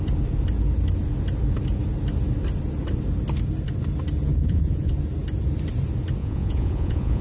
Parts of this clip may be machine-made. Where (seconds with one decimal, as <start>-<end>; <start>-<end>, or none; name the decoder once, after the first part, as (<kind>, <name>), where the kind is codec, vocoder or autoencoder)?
4.3-4.9 (vocoder, Vocos); 6.2-7.2